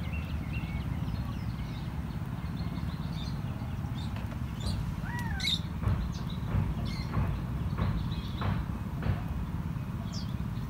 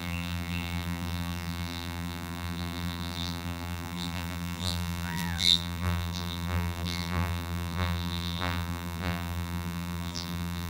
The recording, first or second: first